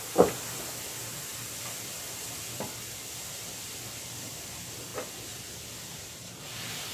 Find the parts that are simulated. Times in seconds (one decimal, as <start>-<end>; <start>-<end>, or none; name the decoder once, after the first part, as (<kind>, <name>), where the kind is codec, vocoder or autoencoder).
1.3-4.3 (vocoder, BigVGAN v2); 4.9-6.4